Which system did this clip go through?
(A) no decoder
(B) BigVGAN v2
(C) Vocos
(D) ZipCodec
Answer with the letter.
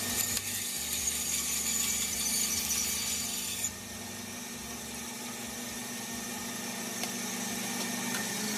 A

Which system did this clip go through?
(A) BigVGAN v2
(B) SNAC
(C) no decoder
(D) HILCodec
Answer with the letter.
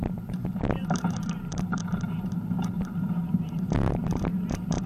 A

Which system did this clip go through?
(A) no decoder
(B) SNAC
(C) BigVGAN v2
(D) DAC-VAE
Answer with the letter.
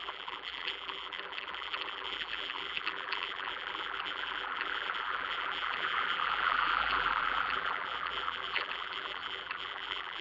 C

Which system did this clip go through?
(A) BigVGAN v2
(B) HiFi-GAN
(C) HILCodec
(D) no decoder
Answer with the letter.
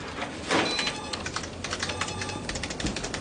A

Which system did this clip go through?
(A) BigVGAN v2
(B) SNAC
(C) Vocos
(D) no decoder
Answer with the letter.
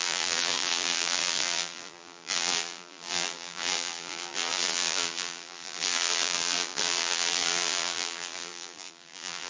A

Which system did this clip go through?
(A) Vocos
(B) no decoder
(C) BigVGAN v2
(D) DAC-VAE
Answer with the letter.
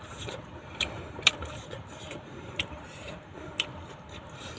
C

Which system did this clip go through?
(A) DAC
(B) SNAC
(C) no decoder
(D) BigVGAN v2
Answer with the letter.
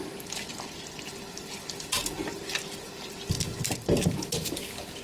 C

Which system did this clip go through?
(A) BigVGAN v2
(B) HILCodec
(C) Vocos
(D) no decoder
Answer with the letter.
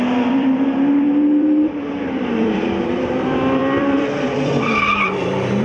A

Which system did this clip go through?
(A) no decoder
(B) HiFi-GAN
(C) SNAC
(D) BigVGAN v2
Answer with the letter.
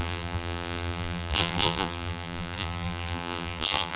D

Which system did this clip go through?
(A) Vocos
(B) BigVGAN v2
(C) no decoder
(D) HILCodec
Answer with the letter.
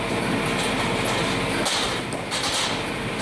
C